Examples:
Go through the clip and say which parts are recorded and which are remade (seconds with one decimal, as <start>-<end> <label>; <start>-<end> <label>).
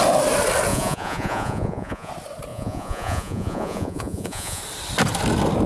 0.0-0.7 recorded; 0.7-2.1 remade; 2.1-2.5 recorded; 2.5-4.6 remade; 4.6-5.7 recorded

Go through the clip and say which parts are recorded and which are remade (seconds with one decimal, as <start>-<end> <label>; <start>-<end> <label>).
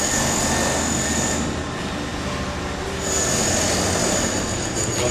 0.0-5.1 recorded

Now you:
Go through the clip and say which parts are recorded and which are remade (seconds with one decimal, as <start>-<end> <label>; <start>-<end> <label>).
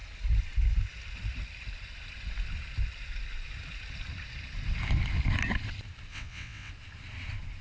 0.0-6.1 recorded; 6.1-6.7 remade; 6.7-7.6 recorded